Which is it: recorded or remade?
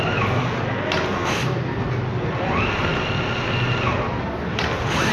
recorded